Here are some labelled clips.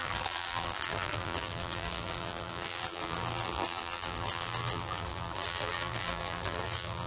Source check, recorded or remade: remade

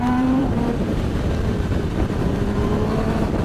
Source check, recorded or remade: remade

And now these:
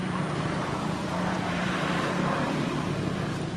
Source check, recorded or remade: remade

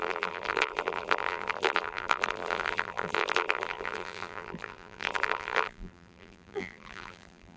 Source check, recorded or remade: remade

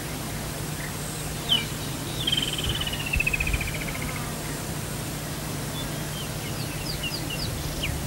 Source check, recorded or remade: recorded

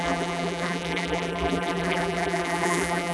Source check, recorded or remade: remade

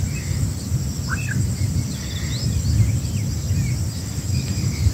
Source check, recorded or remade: recorded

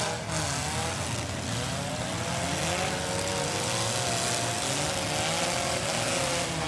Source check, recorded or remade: recorded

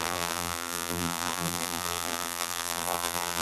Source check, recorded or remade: remade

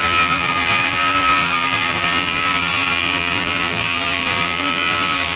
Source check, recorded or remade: remade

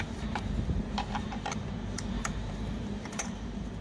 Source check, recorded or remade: remade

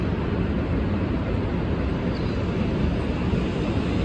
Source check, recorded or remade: recorded